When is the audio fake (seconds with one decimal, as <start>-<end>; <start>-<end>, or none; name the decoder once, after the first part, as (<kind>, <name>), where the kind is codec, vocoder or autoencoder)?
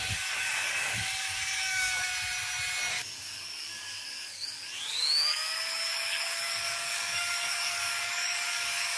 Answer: 0.0-2.1 (codec, DAC); 2.9-9.0